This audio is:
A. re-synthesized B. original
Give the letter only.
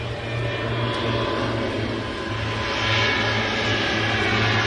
B